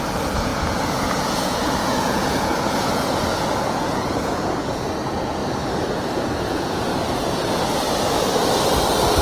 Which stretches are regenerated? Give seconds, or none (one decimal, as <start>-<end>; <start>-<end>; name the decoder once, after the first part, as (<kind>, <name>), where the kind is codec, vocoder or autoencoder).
0.0-5.4 (vocoder, Vocos); 5.9-6.9

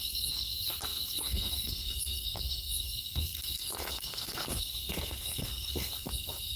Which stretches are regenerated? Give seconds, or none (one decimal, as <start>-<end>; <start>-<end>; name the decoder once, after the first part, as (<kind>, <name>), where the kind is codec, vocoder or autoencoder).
0.0-6.6 (codec, SNAC)

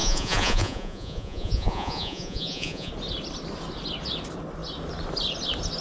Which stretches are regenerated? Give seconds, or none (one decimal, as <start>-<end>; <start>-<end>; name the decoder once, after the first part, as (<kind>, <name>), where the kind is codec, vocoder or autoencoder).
0.0-2.9 (vocoder, Vocos)

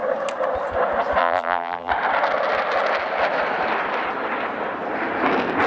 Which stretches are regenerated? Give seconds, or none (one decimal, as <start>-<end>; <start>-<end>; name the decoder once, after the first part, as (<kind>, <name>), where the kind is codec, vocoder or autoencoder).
1.2-1.9 (vocoder, BigVGAN v2)

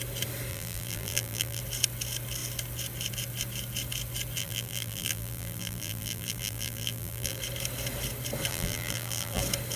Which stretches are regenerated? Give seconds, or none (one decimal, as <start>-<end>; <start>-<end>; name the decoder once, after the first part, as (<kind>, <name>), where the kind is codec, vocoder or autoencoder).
0.5-1.6 (vocoder, BigVGAN v2); 4.4-7.4; 8.5-9.4